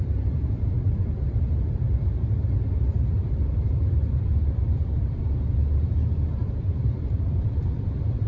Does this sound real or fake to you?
fake